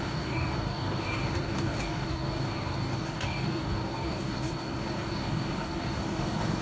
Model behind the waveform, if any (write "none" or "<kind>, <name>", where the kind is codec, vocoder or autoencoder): codec, DAC